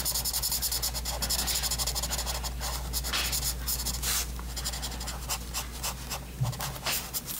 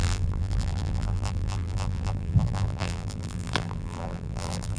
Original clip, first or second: first